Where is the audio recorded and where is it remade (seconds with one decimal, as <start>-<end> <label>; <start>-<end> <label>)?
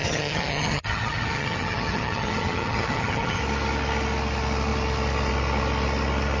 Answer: 0.0-3.4 remade; 3.4-6.4 recorded